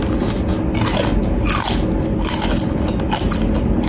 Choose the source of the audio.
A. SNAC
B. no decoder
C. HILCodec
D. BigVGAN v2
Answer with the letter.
B